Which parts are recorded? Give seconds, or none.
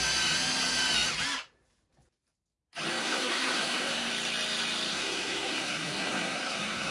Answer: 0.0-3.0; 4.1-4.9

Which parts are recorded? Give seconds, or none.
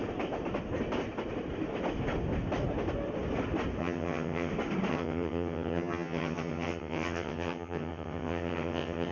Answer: 0.0-3.8; 4.5-4.9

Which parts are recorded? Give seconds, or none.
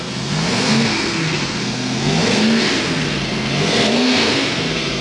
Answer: none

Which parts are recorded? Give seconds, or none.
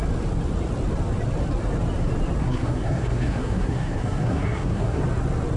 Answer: 0.0-2.4; 5.0-5.6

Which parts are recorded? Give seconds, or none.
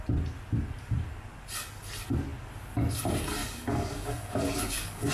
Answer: 0.0-3.4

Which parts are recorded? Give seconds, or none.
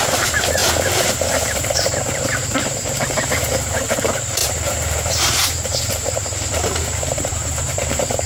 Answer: none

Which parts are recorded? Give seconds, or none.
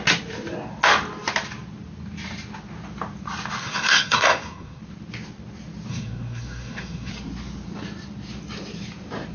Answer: 0.0-3.6; 4.8-5.9; 7.1-9.3